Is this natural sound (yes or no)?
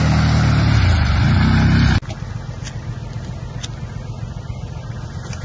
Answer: yes